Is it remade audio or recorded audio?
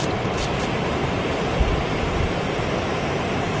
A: remade